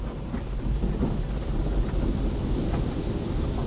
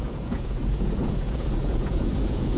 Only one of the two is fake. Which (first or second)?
second